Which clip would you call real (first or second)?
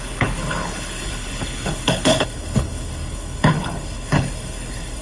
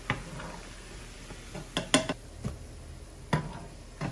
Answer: second